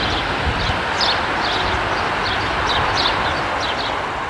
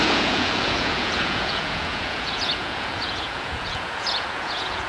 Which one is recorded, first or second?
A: first